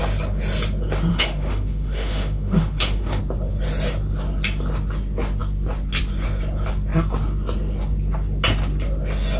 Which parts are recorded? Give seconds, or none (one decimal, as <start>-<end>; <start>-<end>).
0.0-1.1; 3.2-9.4